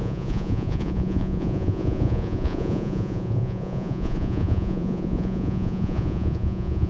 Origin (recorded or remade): remade